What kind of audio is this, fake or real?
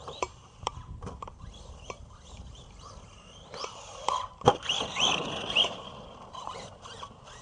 fake